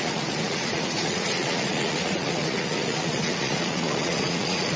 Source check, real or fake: fake